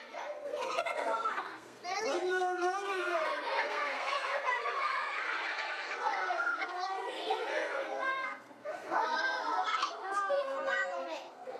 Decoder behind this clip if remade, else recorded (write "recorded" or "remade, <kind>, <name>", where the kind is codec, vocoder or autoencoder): remade, codec, SNAC